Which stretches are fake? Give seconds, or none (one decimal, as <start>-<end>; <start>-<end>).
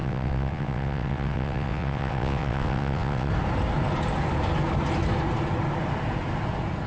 0.0-3.3